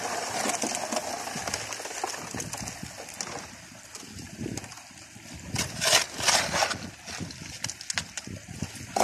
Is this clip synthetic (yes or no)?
no